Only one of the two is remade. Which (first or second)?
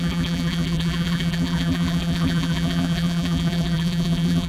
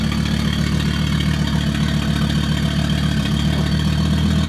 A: first